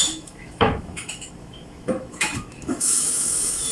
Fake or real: fake